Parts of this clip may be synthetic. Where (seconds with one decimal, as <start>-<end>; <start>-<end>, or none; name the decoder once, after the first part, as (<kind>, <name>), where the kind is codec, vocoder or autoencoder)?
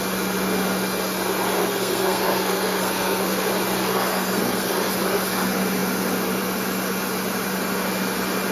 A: 1.6-3.5 (codec, SNAC); 3.9-4.9